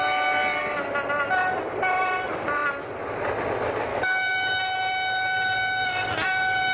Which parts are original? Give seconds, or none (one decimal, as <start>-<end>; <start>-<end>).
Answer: 0.0-3.9; 4.6-6.7